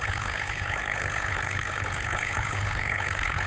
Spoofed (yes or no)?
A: yes